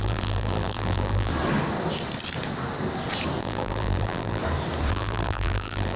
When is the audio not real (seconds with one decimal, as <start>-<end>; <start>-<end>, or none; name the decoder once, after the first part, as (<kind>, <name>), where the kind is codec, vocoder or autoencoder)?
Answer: 0.0-1.3 (vocoder, BigVGAN v2); 3.4-4.4; 4.9-6.0